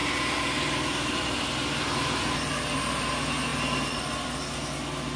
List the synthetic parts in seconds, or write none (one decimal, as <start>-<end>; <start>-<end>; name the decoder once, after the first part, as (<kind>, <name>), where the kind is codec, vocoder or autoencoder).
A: none